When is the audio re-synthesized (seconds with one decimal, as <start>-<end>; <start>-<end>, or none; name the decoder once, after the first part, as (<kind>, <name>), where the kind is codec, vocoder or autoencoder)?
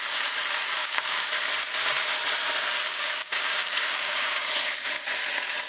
0.8-1.3 (codec, DAC); 2.9-4.5